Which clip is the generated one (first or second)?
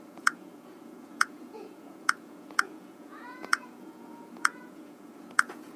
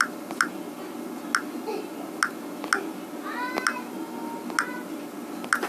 first